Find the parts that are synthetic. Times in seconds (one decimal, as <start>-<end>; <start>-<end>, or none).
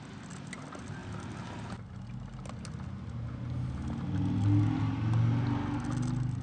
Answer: none